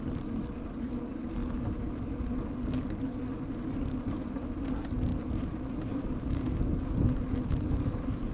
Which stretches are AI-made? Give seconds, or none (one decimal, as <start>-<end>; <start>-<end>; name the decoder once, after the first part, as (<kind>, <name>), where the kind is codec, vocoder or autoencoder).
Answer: none